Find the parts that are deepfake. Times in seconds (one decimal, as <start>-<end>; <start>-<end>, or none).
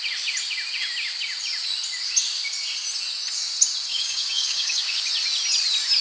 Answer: 3.9-5.0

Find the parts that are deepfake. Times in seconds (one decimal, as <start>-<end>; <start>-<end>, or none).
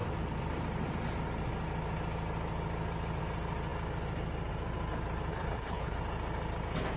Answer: 5.3-6.0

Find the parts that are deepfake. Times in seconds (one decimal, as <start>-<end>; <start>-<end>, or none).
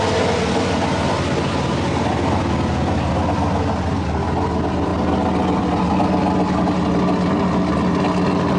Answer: none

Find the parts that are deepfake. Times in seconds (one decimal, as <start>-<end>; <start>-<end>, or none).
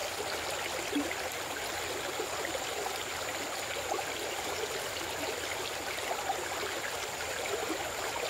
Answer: none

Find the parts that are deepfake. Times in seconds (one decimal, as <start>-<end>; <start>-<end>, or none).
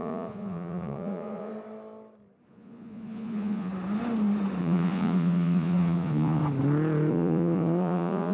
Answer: 0.0-1.5; 2.5-3.7; 4.6-6.4; 7.1-8.3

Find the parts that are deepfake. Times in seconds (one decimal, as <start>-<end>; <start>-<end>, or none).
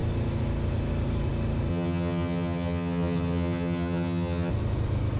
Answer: 1.7-4.5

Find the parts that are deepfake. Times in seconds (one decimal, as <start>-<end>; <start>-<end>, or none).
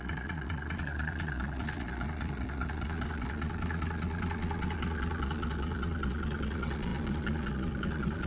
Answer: 0.0-8.3